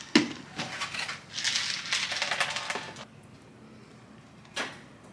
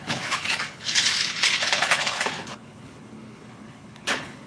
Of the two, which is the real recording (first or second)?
first